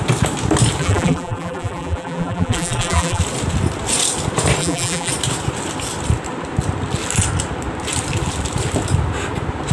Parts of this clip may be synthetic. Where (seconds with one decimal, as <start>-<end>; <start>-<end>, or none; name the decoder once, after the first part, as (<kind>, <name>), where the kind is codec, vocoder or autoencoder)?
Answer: 0.8-3.2 (vocoder, BigVGAN v2); 4.6-5.1